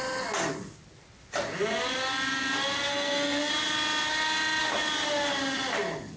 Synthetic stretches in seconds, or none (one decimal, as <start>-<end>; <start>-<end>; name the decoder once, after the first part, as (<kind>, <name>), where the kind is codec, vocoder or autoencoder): 2.9-3.5 (codec, SNAC)